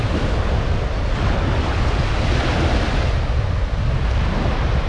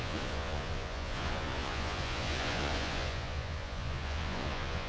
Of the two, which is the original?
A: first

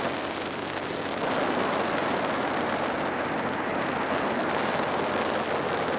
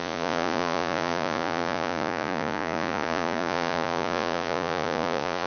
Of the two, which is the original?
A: first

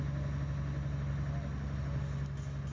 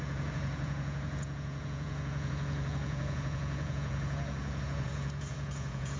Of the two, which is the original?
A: first